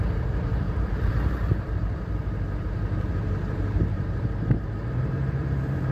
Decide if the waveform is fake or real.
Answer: fake